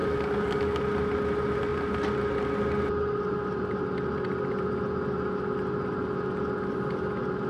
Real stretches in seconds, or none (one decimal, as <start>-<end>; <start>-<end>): 0.8-7.5